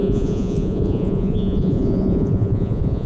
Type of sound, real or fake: fake